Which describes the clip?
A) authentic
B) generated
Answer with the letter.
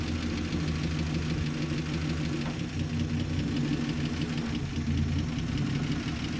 A